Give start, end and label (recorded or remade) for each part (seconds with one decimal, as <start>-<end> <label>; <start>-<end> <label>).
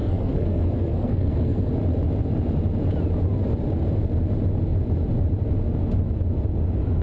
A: 0.0-1.7 remade; 1.7-7.0 recorded